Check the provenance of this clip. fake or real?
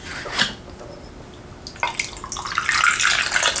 real